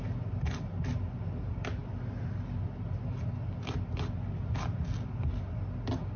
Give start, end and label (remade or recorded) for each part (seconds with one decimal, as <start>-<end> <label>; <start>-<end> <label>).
0.0-6.2 recorded